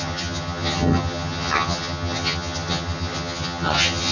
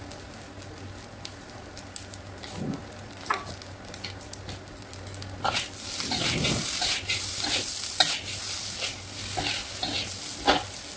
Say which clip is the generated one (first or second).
first